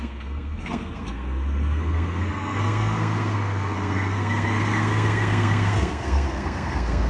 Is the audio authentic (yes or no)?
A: no